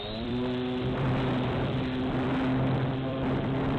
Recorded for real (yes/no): no